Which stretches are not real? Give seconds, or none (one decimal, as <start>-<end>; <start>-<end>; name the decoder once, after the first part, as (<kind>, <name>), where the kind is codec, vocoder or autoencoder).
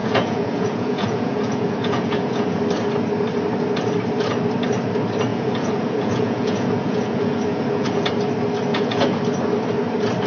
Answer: 0.0-2.6 (vocoder, Vocos); 5.3-8.1; 8.7-9.2